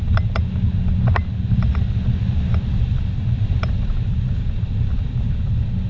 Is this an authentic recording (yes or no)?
yes